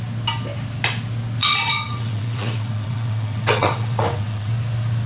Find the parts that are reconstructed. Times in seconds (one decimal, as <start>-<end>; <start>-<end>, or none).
1.4-4.5